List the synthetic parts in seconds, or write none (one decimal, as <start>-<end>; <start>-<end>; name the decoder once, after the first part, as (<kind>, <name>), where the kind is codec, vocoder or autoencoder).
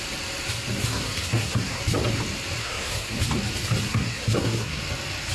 0.8-1.8 (codec, SNAC); 2.6-3.2; 3.9-4.8